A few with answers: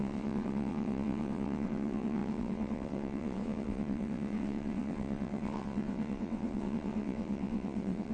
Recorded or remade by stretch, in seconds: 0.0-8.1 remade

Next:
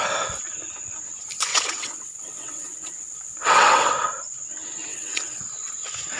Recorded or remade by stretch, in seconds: 0.0-1.5 recorded; 1.5-3.9 remade; 3.9-4.9 recorded; 4.9-5.4 remade; 5.4-6.2 recorded

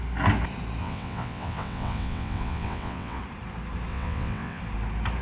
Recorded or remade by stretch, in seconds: 0.0-0.8 recorded; 0.8-3.2 remade; 3.2-3.9 recorded; 3.9-4.6 remade; 4.6-5.2 recorded

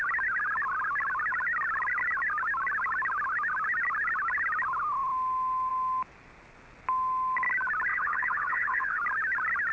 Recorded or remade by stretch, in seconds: 0.0-7.9 recorded; 7.9-9.0 remade; 9.0-9.7 recorded

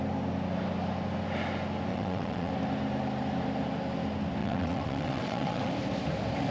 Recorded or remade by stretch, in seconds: 0.0-1.9 recorded; 1.9-2.5 remade; 2.5-4.4 recorded; 4.4-5.7 remade; 5.7-6.5 recorded

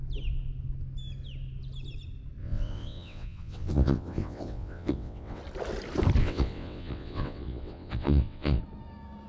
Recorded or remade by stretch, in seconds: 0.0-2.4 recorded; 2.4-5.4 remade; 5.4-6.2 recorded; 6.2-8.6 remade; 8.6-9.3 recorded